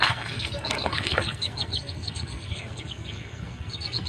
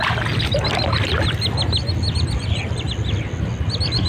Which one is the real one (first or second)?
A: second